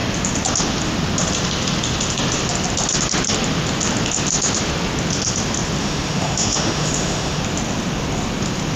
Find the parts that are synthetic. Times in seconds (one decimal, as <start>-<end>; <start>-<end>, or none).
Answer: 5.8-7.4